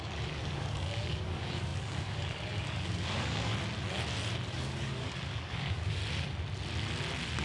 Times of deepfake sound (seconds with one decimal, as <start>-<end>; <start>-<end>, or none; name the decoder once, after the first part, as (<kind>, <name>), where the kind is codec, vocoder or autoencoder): 0.0-3.5 (codec, DAC); 4.5-6.0

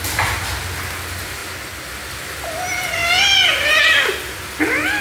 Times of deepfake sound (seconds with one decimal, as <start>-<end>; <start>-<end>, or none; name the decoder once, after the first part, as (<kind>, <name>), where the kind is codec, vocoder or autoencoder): none

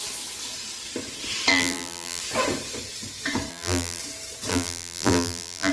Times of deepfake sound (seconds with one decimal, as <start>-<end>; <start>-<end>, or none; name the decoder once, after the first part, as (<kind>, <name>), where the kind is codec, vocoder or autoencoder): 1.5-2.2 (vocoder, BigVGAN v2); 3.5-4.0; 4.5-5.7

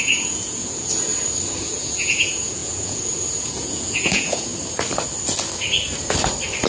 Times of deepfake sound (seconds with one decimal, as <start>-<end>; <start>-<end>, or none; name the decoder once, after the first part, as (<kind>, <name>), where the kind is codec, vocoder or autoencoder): 0.0-1.1 (vocoder, Vocos); 1.6-4.5

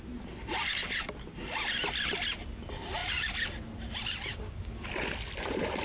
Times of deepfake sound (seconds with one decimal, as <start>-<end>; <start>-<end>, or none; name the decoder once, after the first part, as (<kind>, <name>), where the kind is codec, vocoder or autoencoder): 4.3-4.9 (codec, DAC)

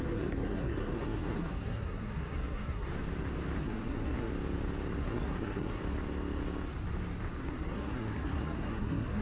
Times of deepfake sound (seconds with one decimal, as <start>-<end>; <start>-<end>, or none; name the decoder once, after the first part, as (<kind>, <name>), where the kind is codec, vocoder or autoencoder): 0.0-2.9 (codec, SNAC); 3.6-4.3; 5.0-5.8; 7.4-9.2

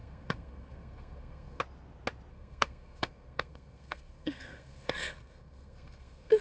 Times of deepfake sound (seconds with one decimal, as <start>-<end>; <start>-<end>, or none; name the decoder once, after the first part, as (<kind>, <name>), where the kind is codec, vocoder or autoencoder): 0.0-1.6 (codec, SNAC); 2.3-6.4

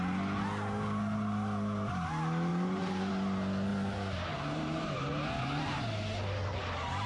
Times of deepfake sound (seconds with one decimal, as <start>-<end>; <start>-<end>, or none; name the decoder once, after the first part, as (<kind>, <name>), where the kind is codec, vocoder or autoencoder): 2.5-3.1 (vocoder, BigVGAN v2); 3.7-5.8